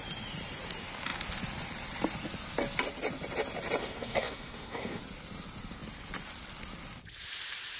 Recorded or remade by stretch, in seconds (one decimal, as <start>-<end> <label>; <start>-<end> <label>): 0.0-3.8 recorded; 3.8-5.0 remade; 5.0-7.8 recorded